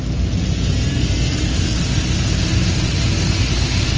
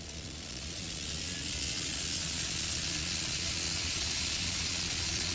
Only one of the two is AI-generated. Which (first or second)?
second